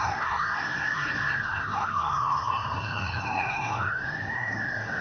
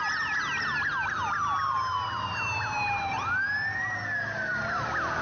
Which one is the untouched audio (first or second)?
second